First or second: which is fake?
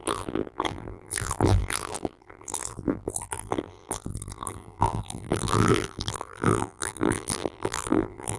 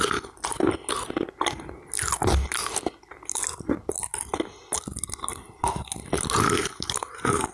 first